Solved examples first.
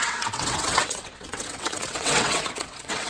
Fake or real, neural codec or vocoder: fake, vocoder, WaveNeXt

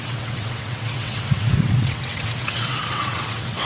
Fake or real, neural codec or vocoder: fake, vocoder, WaveNeXt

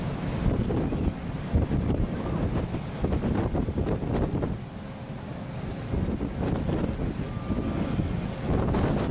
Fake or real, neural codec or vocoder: real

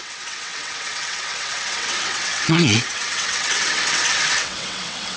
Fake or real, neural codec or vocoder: fake, vocoder, WaveNeXt